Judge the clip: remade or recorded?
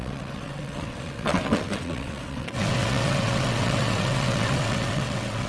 remade